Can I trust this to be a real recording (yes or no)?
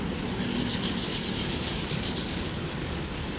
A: no